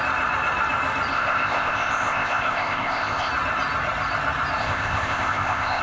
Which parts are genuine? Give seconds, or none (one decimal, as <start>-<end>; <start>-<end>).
0.0-1.1; 3.3-4.6